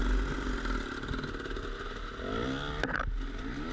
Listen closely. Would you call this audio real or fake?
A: real